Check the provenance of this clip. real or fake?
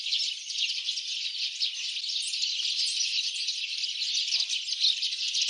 real